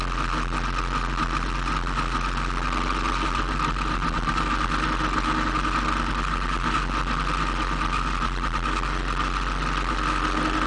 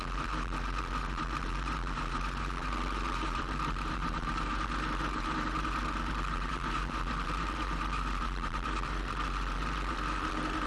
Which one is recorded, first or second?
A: first